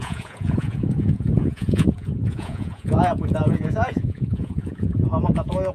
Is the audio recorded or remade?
remade